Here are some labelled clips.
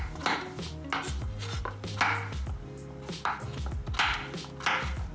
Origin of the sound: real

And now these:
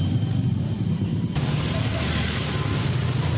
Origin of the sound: real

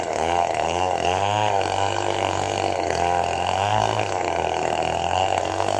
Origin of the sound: fake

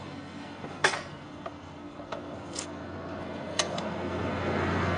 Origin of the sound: fake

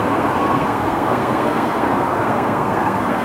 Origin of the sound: fake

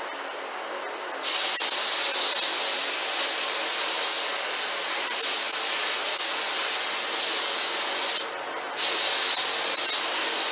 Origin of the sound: real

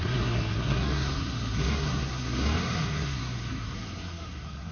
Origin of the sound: fake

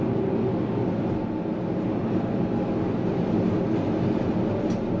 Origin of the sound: real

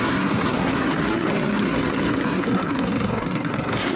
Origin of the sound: fake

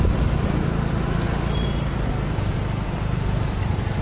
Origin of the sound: real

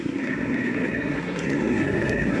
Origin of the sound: fake